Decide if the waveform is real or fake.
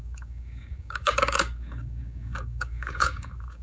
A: fake